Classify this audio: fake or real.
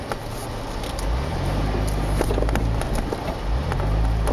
real